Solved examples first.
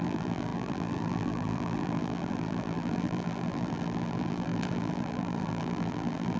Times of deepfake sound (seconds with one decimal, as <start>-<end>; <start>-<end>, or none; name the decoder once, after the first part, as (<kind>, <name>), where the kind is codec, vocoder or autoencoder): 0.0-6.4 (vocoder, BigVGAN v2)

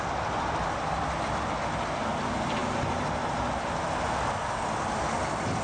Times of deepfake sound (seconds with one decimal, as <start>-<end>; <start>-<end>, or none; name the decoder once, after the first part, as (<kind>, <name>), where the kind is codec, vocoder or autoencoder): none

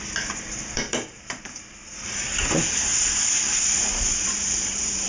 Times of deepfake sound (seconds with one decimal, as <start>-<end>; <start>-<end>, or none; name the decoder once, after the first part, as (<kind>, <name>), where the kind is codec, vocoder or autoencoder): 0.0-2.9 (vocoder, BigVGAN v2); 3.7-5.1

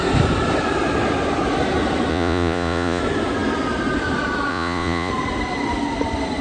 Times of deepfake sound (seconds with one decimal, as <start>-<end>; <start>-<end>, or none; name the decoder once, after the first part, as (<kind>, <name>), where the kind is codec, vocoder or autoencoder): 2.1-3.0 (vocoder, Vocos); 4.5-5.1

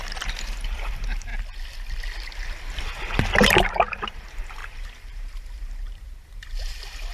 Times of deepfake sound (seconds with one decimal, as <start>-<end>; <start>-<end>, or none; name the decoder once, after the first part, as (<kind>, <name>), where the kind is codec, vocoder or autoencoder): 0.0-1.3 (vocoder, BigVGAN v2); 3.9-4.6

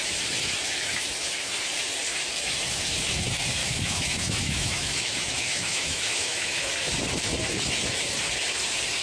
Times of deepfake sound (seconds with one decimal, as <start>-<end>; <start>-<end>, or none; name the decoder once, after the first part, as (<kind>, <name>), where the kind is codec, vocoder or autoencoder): 3.6-6.7 (autoencoder, DAC-VAE)